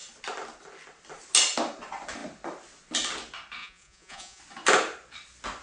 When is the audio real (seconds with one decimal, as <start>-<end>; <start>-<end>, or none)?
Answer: 0.0-3.6; 4.4-5.6